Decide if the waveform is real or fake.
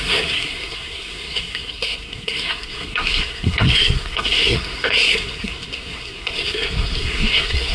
fake